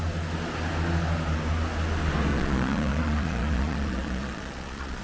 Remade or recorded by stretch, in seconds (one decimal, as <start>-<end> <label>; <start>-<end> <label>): 0.0-2.3 recorded; 2.3-5.0 remade